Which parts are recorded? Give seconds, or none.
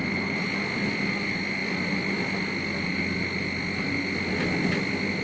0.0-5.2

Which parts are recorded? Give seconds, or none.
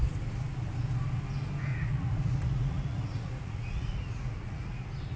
0.0-1.7; 4.8-5.2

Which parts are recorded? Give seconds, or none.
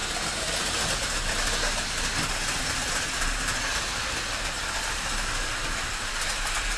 0.0-6.8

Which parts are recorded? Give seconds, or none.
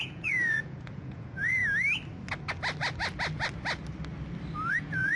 1.6-4.7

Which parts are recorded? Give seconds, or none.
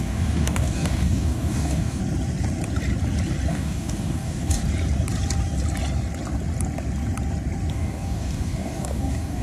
2.0-3.5; 4.6-7.7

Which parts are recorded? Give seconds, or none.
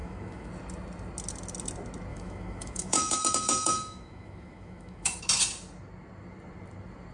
0.5-2.1; 5.2-7.1